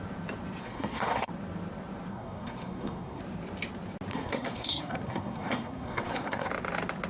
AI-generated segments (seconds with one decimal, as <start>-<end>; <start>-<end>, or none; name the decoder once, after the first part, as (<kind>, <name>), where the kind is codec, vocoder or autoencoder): 0.6-1.3 (codec, SNAC); 2.1-3.2; 4.1-6.5

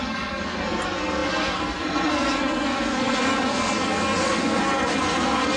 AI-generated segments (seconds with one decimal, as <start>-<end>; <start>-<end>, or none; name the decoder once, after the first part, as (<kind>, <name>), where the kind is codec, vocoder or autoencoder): 0.0-5.6 (codec, SNAC)

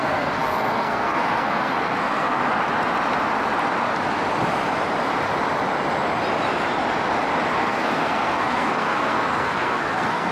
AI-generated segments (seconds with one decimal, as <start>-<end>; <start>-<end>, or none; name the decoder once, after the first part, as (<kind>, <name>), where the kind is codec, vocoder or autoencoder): 0.0-2.4 (codec, SNAC); 7.6-10.3

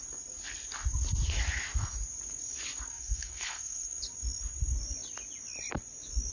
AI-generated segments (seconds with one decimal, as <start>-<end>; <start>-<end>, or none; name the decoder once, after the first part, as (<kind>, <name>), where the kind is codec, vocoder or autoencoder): 2.9-4.0 (codec, SNAC)

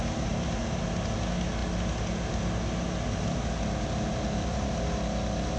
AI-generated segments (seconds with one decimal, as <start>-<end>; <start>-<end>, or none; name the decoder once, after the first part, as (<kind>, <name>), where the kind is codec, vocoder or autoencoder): none

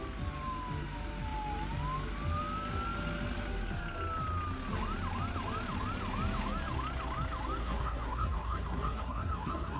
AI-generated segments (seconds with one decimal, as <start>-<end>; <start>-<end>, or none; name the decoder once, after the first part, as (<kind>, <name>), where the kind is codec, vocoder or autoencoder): 7.6-9.8 (codec, SNAC)